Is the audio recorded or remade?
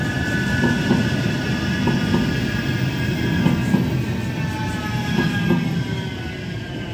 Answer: recorded